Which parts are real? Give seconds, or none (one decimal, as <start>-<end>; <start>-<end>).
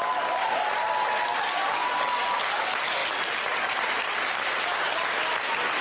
0.0-5.8